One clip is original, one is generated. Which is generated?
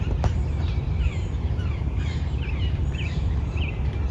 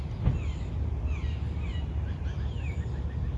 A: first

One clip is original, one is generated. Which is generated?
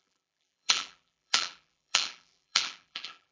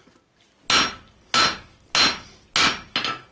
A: first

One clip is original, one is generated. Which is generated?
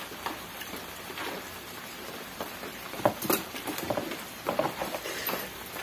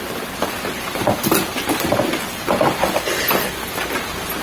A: first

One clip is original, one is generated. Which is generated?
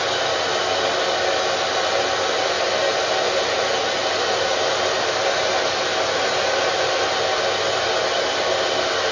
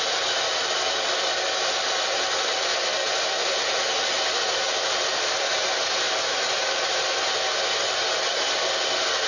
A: second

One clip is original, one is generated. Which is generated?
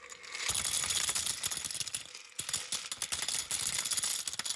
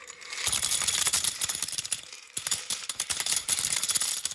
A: second